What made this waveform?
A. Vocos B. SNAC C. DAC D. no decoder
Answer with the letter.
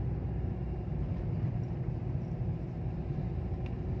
D